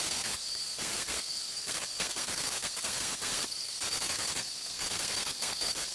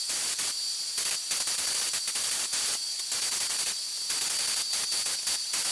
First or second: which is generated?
first